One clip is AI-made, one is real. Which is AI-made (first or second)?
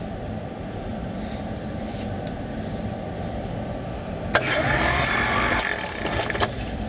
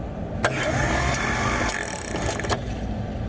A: first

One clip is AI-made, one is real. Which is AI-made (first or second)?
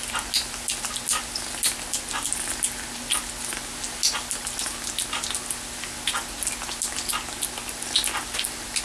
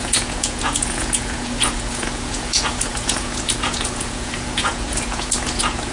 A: second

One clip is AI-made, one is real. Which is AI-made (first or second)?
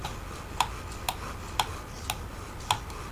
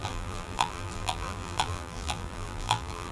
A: second